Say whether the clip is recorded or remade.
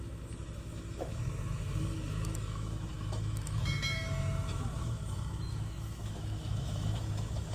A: remade